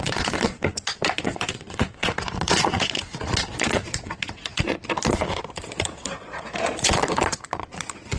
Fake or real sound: fake